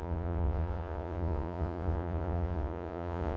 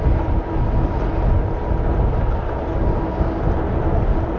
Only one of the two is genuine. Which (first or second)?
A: second